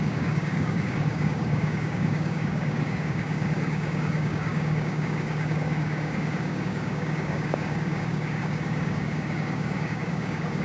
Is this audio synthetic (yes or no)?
yes